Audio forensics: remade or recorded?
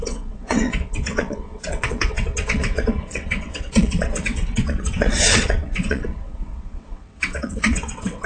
remade